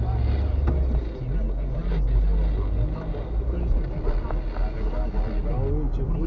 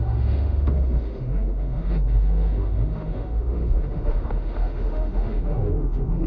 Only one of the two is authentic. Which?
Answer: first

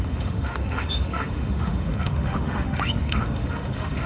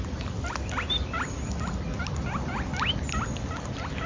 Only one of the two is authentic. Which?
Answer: second